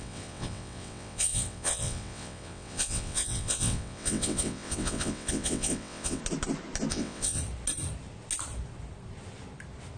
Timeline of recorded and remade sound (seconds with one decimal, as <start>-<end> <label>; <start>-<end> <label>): 0.0-6.2 remade; 6.2-6.9 recorded; 6.9-7.4 remade; 7.4-10.0 recorded